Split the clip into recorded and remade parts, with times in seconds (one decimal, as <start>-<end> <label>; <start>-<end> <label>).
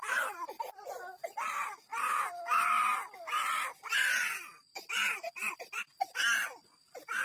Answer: 0.0-7.2 recorded